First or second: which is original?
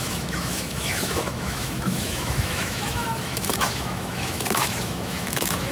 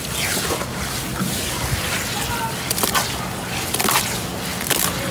second